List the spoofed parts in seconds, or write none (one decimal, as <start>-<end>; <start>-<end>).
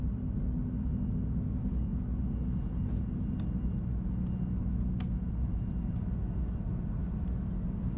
none